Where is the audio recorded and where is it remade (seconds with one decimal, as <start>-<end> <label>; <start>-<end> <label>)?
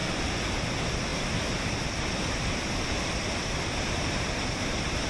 0.0-0.5 remade; 0.5-1.1 recorded; 1.1-4.2 remade; 4.2-5.1 recorded